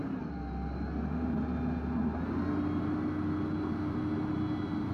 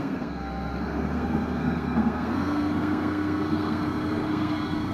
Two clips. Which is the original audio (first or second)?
first